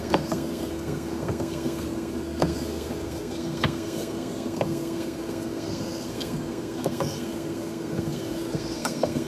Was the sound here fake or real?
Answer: fake